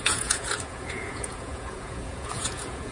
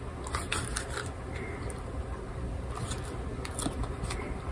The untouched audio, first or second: second